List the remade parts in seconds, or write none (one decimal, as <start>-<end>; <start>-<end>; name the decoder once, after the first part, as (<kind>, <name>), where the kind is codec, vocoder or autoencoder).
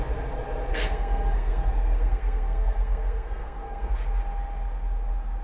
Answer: 0.7-3.9 (codec, SNAC)